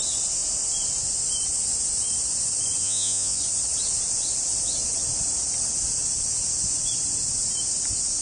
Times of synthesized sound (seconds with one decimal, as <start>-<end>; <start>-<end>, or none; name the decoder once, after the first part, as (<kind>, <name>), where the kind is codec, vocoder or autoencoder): 2.8-3.4 (vocoder, Vocos)